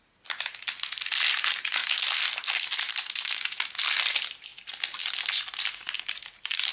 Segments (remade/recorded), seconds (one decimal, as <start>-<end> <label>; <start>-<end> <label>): 0.0-6.7 recorded